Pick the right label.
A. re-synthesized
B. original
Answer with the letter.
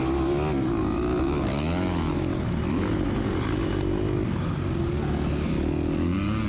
B